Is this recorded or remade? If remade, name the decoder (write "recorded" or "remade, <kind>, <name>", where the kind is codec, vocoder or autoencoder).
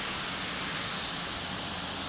recorded